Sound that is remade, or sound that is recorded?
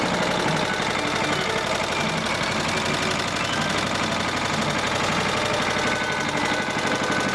recorded